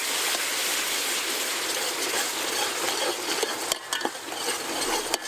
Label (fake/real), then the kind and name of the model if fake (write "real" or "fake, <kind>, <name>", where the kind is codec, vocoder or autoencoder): real